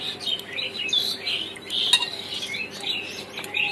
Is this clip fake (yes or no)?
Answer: no